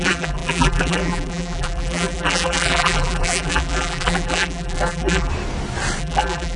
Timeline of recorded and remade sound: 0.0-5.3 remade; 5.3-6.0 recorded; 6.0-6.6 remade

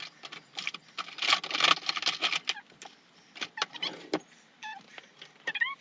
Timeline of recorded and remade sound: 0.0-5.8 recorded

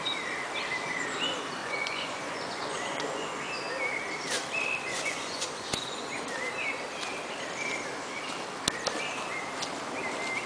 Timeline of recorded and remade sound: 0.0-1.6 recorded; 1.6-3.4 remade; 3.4-4.9 recorded; 4.9-6.2 remade; 6.2-10.5 recorded

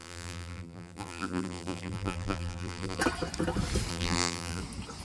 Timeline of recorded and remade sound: 0.0-3.0 remade; 3.0-3.9 recorded; 3.9-4.6 remade; 4.6-5.0 recorded

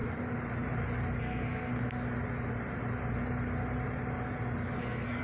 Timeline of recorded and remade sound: 0.0-1.2 recorded; 1.2-1.7 remade; 1.7-4.8 recorded; 4.8-5.2 remade